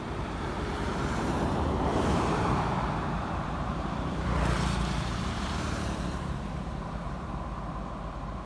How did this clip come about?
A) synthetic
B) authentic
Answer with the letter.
A